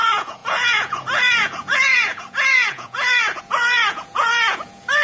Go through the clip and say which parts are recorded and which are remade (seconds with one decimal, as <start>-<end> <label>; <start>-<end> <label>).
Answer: 0.0-5.0 remade